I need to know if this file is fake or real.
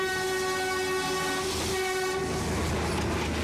real